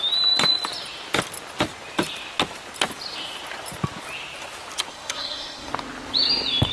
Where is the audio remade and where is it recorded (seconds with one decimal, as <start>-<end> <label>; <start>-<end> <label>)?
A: 0.0-4.9 recorded; 4.9-5.7 remade; 5.7-6.7 recorded